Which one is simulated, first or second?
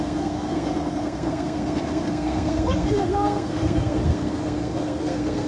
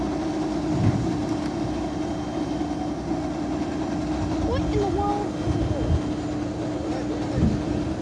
first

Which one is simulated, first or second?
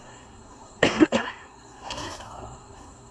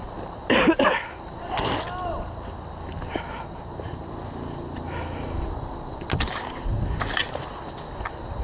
first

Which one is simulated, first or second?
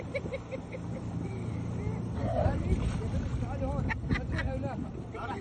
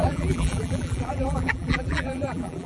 second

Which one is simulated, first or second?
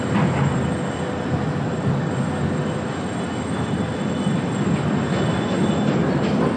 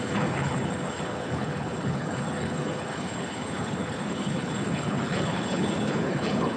second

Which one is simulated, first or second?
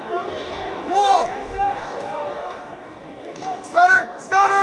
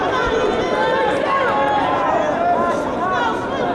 first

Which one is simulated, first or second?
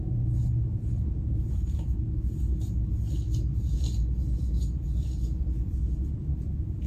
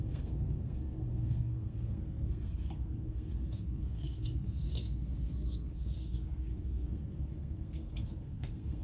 second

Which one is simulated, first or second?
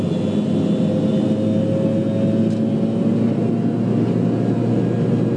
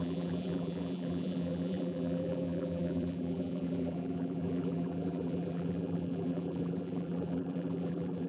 second